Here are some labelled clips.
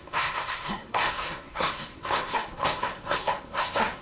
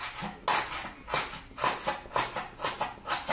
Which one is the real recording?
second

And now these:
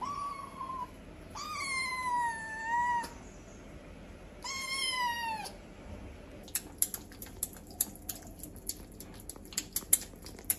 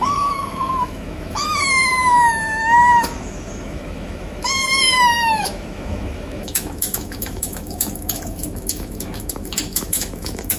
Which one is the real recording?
first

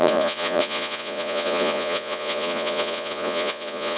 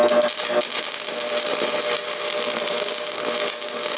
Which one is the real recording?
second